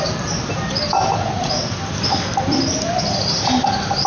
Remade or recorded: recorded